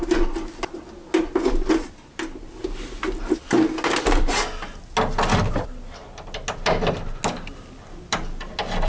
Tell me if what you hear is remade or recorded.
recorded